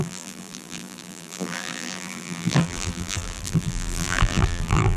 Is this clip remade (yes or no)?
yes